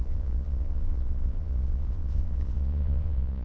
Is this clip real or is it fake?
fake